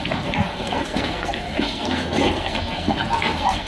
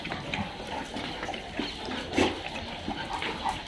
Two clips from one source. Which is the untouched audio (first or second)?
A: second